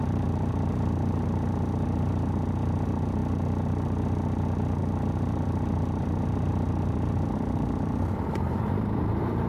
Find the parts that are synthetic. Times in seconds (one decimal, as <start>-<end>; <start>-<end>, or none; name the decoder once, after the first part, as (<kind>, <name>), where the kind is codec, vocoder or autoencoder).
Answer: 0.0-3.2 (vocoder, BigVGAN v2); 4.8-9.5